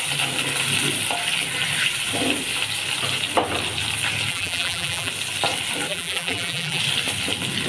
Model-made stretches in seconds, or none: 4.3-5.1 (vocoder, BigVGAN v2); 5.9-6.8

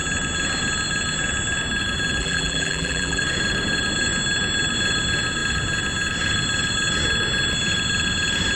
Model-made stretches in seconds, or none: 2.2-3.2 (vocoder, BigVGAN v2)

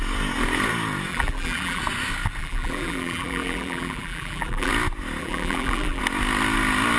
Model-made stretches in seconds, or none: 1.1-1.8 (vocoder, BigVGAN v2); 2.4-4.7; 5.2-6.0

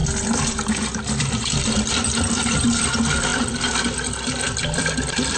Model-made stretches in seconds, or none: 1.2-5.4 (vocoder, BigVGAN v2)

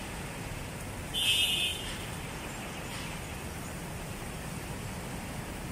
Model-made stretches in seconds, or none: 0.0-0.8 (vocoder, BigVGAN v2); 1.7-4.7